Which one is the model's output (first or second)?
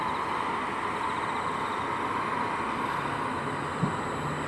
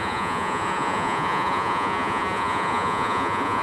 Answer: second